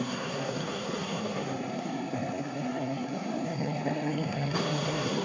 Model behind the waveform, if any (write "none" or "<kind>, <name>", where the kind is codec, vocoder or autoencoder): codec, SNAC